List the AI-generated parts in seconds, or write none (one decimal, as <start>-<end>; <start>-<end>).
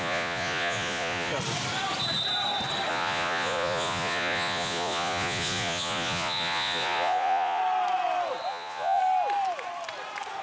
0.0-1.3; 2.9-7.6; 8.5-9.0